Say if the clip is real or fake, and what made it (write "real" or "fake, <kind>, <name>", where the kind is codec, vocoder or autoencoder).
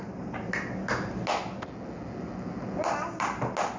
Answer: real